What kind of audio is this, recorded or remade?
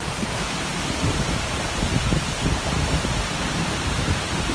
remade